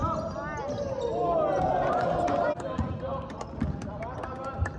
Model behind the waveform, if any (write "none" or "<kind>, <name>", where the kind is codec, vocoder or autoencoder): none